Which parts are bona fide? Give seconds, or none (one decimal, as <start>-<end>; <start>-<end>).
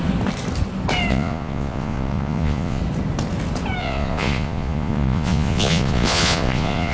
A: 0.0-1.1; 2.8-3.8